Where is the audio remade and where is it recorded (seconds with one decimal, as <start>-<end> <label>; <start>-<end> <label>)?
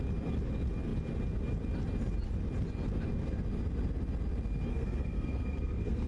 0.0-4.7 recorded; 4.7-6.1 remade